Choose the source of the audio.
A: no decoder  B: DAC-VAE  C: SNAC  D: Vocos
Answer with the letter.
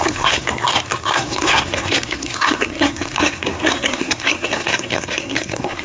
C